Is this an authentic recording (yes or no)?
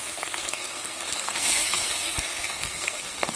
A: no